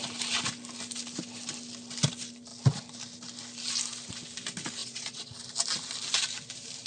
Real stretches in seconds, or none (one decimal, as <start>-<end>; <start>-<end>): 0.0-4.8; 5.3-6.9